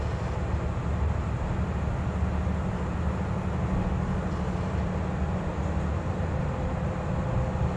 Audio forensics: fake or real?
real